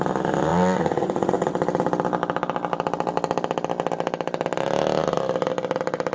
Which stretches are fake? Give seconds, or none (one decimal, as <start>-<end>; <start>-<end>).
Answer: 0.5-1.5